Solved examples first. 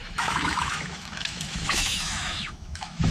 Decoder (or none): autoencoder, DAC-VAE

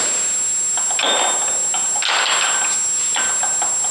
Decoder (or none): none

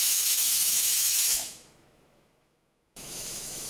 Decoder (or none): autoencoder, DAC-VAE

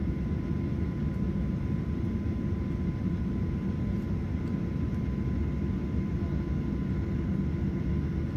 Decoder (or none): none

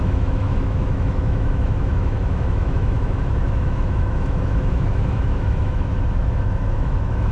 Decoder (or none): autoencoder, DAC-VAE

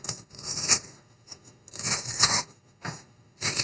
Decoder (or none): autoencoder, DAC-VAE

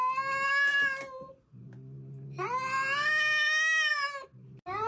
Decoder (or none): none